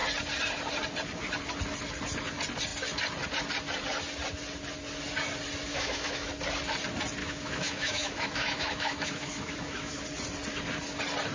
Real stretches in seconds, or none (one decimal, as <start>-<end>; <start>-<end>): 0.0-5.7; 6.3-7.2; 10.0-11.3